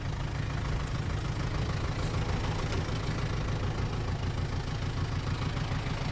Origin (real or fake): real